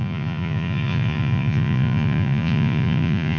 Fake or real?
fake